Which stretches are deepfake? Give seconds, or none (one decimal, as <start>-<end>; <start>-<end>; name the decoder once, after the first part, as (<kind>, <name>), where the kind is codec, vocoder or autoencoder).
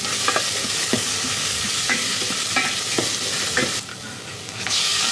0.6-2.2 (codec, DAC); 3.9-5.1